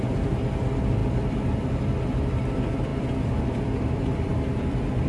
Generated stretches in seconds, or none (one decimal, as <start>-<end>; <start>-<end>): 0.0-5.1